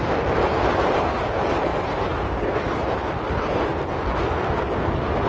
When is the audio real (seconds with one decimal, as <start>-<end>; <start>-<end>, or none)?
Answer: 3.7-5.3